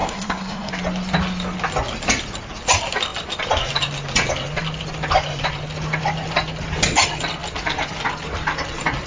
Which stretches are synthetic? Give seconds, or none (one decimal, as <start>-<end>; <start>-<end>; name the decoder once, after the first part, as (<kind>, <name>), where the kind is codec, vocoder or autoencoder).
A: 0.0-0.7 (codec, SNAC)